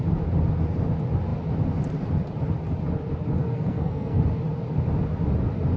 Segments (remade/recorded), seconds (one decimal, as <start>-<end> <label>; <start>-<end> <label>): 0.0-3.4 recorded; 3.4-4.2 remade; 4.2-5.8 recorded